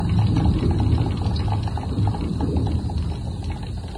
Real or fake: real